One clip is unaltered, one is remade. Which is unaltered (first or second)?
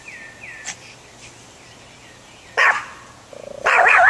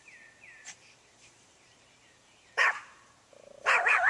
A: first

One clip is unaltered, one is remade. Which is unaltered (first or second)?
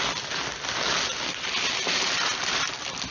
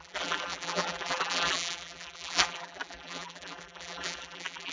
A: first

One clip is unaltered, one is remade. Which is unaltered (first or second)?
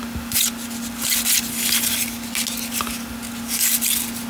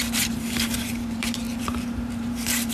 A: first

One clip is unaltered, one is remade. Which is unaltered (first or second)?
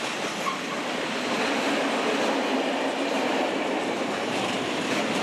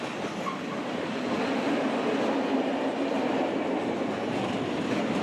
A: second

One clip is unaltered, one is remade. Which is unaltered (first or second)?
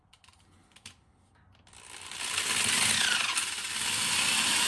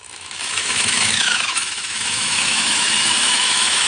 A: first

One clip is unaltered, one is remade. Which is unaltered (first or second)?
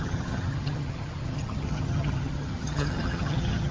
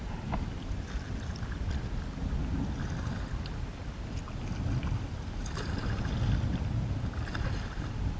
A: second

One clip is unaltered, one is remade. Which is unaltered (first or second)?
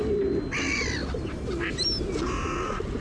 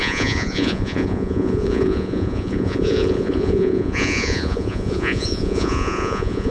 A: first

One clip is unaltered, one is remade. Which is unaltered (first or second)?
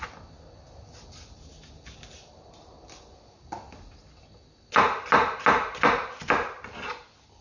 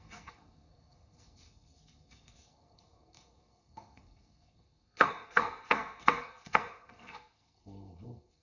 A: first